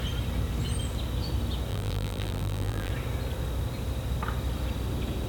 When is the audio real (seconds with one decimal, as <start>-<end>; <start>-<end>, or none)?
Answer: 0.0-1.7; 2.9-5.3